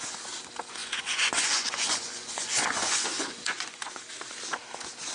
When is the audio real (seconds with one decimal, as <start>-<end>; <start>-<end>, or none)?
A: 0.0-0.8; 3.9-5.1